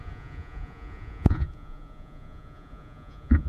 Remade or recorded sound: remade